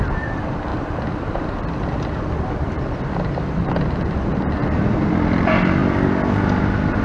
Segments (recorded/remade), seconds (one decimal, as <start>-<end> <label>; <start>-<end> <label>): 0.0-0.7 recorded; 0.7-3.6 remade; 3.6-7.0 recorded